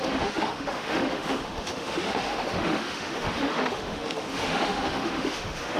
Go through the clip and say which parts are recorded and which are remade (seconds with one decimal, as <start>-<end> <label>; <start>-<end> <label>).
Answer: 0.0-5.8 remade